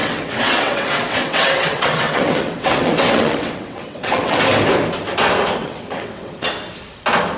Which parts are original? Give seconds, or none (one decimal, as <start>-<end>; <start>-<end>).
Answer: 4.4-5.6; 6.5-7.4